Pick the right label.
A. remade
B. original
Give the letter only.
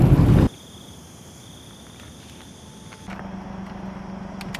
B